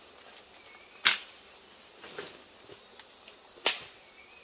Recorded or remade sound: recorded